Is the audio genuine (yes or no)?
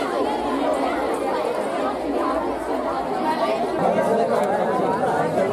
yes